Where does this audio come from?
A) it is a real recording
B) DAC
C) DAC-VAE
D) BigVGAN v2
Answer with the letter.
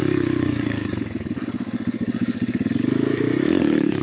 B